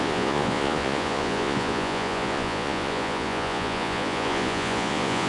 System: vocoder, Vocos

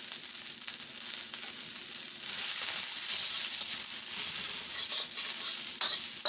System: none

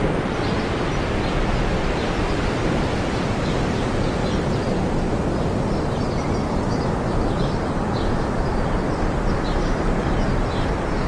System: none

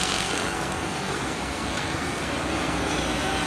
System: codec, SNAC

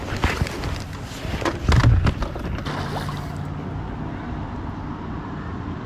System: none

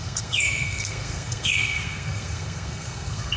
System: codec, SNAC